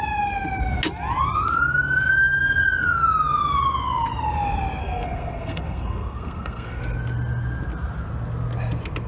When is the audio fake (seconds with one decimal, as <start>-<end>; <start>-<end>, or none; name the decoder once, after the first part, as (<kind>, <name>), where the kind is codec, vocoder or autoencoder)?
4.8-6.8 (codec, SNAC)

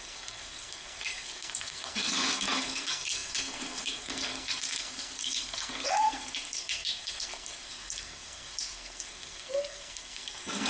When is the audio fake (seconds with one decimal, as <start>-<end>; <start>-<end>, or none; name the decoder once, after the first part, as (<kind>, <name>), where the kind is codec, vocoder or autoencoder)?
0.0-10.7 (codec, SNAC)